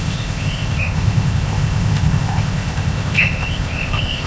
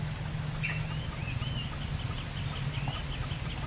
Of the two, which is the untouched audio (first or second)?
second